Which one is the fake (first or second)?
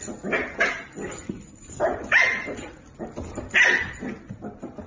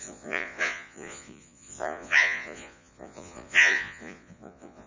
second